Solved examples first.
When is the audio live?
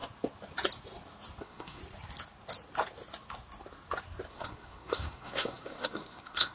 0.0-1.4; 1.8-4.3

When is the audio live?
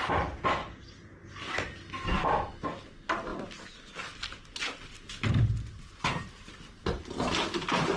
0.0-0.6; 1.6-3.3; 6.7-8.0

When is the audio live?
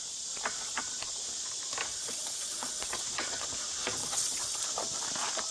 0.0-1.9; 3.0-4.0; 4.6-5.5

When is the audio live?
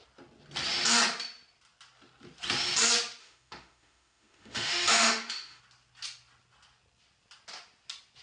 0.0-3.2; 5.6-8.2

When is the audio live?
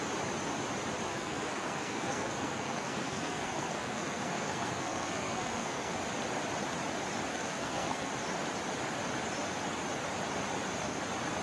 0.0-1.1; 6.0-7.3; 8.1-11.4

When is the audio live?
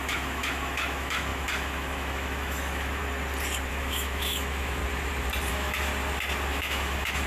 3.0-3.7; 4.8-5.5; 5.9-6.5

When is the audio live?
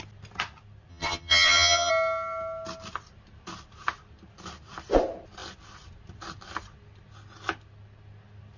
0.0-0.9; 1.9-8.6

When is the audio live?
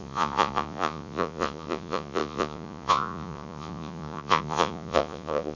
none